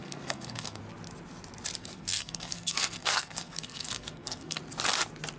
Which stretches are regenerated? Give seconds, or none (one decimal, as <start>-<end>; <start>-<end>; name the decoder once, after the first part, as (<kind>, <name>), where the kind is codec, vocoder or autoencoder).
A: 0.0-0.8 (codec, SNAC); 1.8-4.6